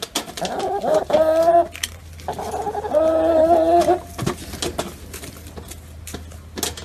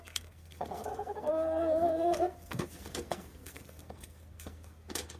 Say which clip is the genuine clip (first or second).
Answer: first